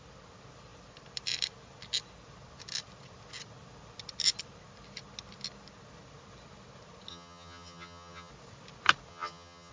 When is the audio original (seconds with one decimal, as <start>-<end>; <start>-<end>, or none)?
0.0-7.1; 8.3-9.1

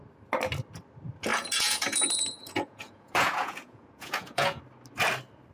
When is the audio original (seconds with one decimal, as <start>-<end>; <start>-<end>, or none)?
0.0-1.3; 4.6-5.5

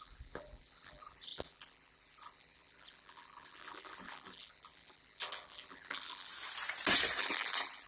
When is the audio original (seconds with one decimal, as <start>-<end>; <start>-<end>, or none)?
6.3-7.2

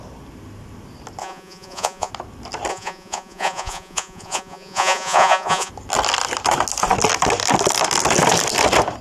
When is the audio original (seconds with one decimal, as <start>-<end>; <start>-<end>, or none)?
0.0-1.2; 2.1-2.7; 5.7-9.0

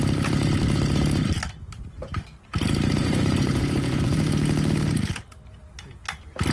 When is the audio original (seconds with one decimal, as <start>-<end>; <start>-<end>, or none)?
0.0-3.0; 4.2-6.5

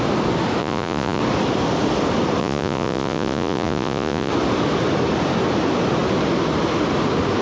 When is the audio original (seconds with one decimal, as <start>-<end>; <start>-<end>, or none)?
0.0-0.6; 1.2-2.4; 4.3-7.4